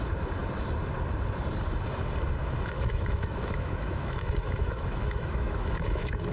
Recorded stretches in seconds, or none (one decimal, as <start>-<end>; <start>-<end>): 0.0-2.4